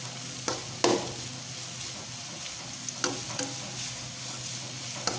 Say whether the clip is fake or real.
real